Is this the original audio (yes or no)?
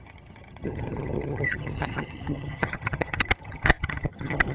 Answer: no